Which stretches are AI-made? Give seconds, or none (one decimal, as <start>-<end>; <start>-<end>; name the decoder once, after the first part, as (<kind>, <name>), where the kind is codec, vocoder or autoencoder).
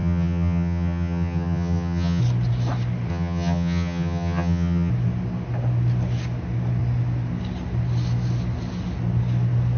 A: 0.0-2.2 (vocoder, HiFi-GAN); 3.1-4.9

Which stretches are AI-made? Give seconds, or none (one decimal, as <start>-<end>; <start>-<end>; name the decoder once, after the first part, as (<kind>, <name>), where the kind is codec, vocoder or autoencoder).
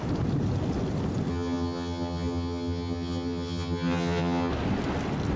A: 1.3-4.5 (vocoder, HiFi-GAN)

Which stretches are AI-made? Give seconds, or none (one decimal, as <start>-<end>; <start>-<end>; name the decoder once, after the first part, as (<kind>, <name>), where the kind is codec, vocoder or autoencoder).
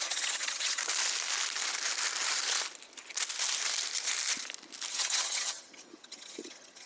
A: 0.0-0.8 (vocoder, HiFi-GAN); 4.9-6.9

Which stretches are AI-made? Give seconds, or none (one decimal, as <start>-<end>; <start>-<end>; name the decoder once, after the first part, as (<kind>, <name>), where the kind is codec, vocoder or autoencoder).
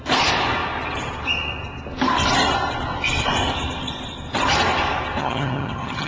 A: 5.2-6.1 (vocoder, HiFi-GAN)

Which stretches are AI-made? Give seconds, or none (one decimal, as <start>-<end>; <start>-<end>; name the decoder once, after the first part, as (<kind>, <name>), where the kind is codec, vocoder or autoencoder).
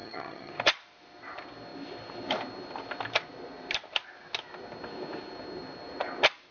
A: 0.0-0.5 (vocoder, HiFi-GAN)